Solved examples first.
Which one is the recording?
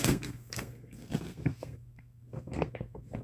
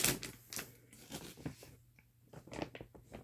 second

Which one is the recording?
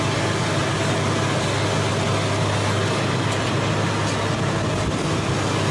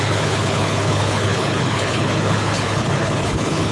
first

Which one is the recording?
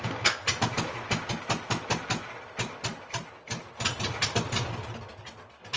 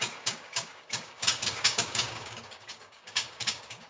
first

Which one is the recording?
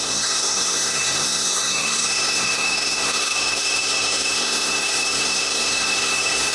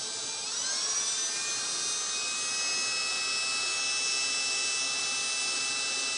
second